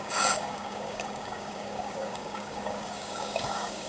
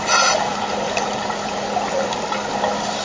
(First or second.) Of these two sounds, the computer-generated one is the first